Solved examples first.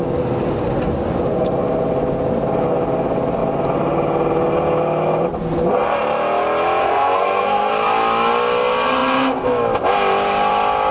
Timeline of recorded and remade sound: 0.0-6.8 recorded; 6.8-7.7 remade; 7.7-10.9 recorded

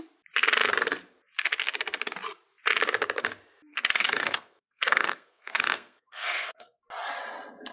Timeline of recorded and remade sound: 0.0-3.7 recorded; 3.7-6.8 remade; 6.8-7.7 recorded

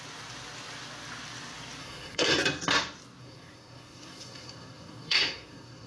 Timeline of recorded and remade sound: 0.0-1.8 recorded; 1.8-2.3 remade; 2.3-3.2 recorded; 3.2-5.9 remade

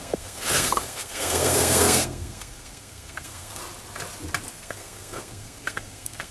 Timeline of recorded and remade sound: 0.0-3.6 remade; 3.6-4.5 recorded; 4.5-6.3 remade

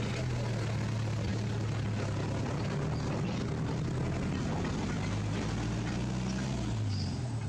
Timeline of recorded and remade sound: 0.0-7.5 recorded

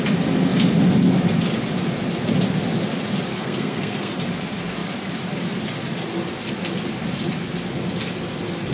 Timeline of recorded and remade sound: 0.0-3.3 recorded; 3.3-4.1 remade; 4.1-8.7 recorded